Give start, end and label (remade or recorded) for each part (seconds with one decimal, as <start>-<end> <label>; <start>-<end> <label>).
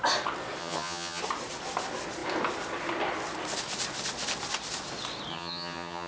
0.0-0.6 recorded; 0.6-1.2 remade; 1.2-5.3 recorded; 5.3-6.1 remade